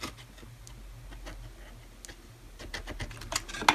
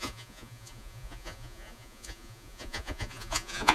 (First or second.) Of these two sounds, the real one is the first